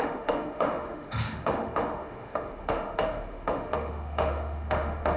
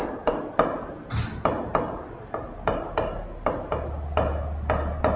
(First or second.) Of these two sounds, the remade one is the first